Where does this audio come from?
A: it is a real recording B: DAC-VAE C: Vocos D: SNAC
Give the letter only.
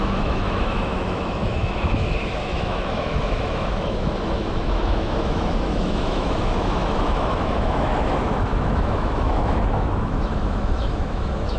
B